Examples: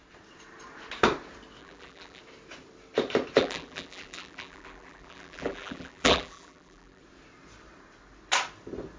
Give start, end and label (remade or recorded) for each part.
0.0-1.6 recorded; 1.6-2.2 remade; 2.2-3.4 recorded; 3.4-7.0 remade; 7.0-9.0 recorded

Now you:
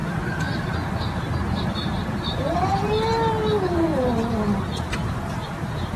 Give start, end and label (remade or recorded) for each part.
0.0-2.9 remade; 2.9-6.0 recorded

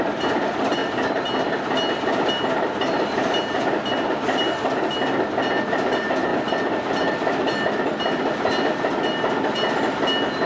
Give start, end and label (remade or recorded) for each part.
0.0-0.8 remade; 0.8-5.6 recorded; 5.6-6.3 remade; 6.3-6.9 recorded; 6.9-10.5 remade

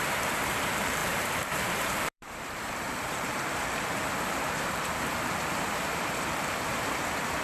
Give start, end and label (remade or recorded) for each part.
0.0-7.4 remade